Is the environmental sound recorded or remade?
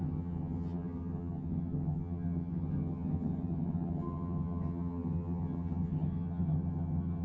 remade